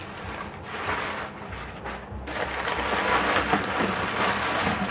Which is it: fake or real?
fake